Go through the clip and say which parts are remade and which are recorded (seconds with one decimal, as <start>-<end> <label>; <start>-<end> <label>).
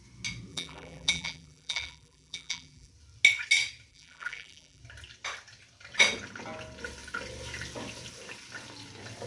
0.0-0.5 recorded; 0.5-2.9 remade; 2.9-3.9 recorded; 3.9-4.8 remade; 4.8-9.3 recorded